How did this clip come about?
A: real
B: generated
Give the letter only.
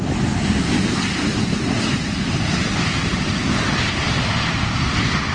A